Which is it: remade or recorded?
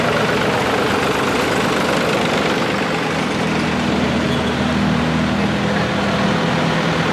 recorded